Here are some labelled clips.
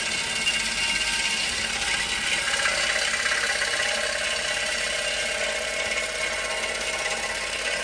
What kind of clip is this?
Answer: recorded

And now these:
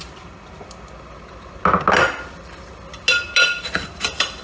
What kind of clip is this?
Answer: recorded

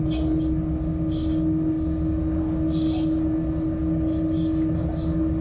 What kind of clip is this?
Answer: recorded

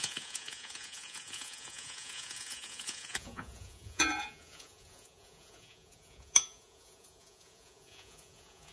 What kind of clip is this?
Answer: remade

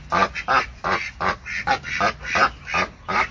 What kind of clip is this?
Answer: recorded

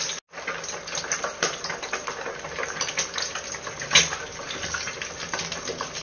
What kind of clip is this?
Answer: recorded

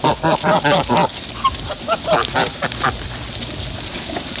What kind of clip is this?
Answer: recorded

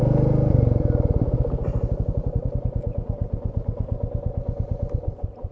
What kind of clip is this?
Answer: recorded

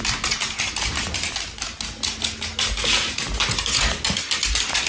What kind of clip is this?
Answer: recorded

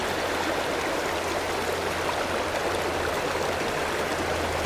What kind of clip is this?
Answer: recorded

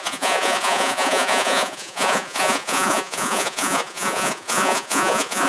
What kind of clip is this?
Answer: remade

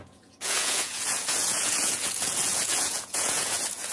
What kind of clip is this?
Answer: remade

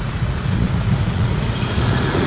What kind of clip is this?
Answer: remade